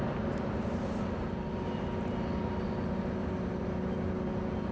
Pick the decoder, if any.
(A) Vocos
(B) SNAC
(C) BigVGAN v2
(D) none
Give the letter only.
D